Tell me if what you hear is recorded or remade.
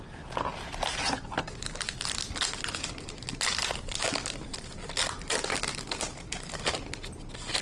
recorded